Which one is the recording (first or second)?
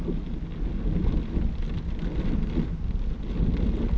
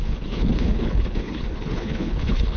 first